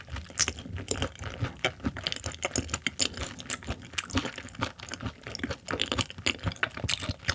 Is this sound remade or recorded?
recorded